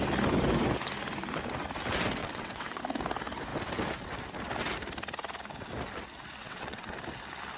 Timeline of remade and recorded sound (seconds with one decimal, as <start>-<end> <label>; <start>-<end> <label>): 0.0-2.2 recorded; 2.2-2.8 remade; 2.8-6.4 recorded; 6.4-6.9 remade; 6.9-7.6 recorded